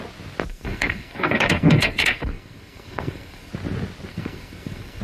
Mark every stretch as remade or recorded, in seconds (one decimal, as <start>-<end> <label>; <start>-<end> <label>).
0.0-0.5 recorded; 0.5-3.5 remade; 3.5-4.1 recorded; 4.1-5.0 remade